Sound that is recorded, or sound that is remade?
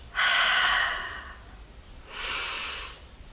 recorded